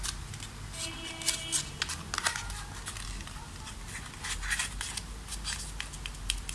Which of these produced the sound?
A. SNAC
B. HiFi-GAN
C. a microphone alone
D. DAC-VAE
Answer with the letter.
C